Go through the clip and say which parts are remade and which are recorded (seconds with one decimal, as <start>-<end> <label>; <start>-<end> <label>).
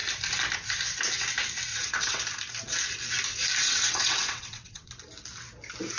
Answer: 0.0-1.7 recorded; 1.7-2.2 remade; 2.2-3.6 recorded; 3.6-4.9 remade; 4.9-6.0 recorded